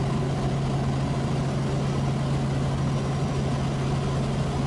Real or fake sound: real